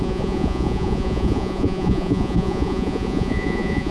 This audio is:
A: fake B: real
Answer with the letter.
A